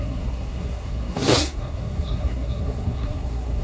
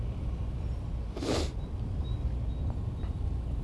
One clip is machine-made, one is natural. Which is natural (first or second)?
second